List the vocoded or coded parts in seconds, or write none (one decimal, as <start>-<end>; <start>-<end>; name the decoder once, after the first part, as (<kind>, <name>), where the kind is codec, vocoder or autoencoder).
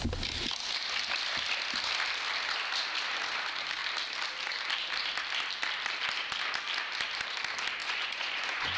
7.8-8.8 (vocoder, Vocos)